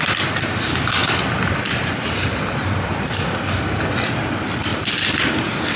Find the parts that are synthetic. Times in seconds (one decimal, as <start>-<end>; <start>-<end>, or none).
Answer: none